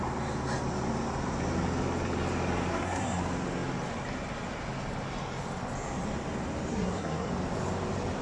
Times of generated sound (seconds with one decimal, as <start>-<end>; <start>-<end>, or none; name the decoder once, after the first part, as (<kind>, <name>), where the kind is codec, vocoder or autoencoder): 2.7-3.2 (codec, SNAC); 6.7-7.3